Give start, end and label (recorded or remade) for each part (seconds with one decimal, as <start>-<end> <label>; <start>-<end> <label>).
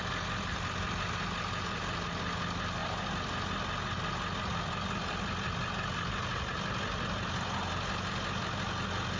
0.0-9.2 recorded